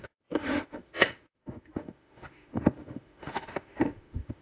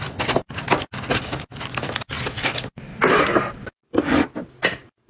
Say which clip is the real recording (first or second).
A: second